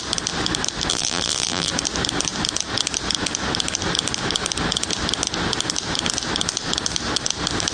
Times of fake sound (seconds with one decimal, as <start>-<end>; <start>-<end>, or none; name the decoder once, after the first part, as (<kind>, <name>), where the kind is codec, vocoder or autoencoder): 0.9-1.7 (vocoder, BigVGAN v2)